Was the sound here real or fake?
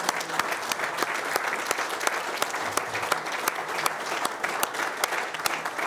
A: real